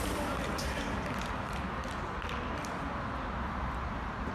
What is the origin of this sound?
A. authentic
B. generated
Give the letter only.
A